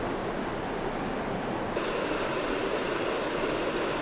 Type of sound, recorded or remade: recorded